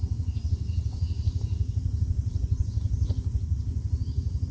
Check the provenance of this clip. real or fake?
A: real